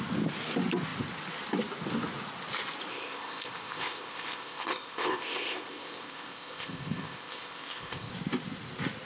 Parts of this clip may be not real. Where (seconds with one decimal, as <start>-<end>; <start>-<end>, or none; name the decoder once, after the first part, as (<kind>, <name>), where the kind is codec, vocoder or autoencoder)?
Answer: 2.9-8.1 (codec, ZipCodec)